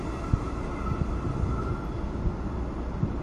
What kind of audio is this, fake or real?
real